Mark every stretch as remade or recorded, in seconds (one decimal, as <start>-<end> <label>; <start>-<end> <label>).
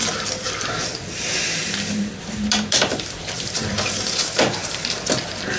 0.0-1.6 recorded; 1.6-3.9 remade; 3.9-4.6 recorded; 4.6-5.6 remade